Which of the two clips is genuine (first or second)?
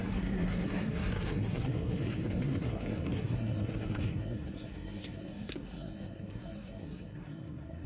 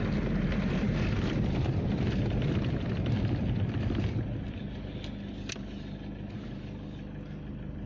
second